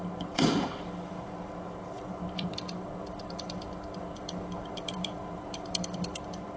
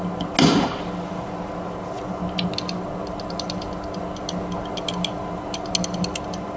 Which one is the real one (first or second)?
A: second